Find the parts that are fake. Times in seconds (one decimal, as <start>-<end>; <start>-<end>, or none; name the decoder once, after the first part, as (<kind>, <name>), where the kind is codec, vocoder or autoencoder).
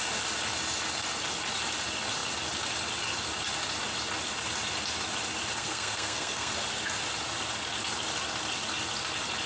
5.6-6.5 (codec, SNAC)